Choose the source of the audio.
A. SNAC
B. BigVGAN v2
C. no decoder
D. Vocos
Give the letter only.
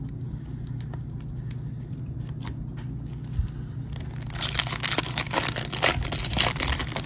C